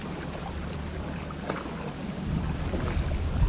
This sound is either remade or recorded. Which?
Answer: remade